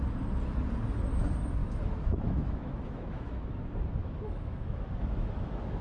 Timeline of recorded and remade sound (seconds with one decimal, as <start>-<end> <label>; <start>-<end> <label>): 0.0-1.6 recorded; 1.6-3.5 remade; 3.5-4.0 recorded; 4.0-5.8 remade